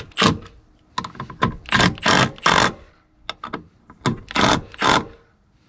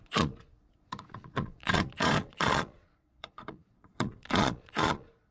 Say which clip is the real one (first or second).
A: first